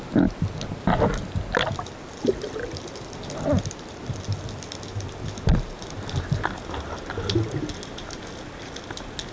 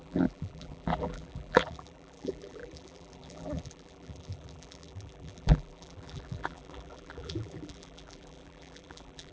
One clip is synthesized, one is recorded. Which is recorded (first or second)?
first